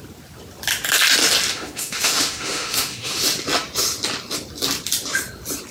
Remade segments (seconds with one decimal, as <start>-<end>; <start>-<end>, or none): 1.5-3.2